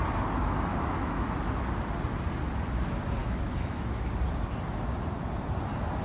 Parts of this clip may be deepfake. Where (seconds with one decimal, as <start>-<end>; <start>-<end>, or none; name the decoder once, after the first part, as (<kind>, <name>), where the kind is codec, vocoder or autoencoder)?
0.7-1.3 (autoencoder, DAC-VAE); 3.2-4.1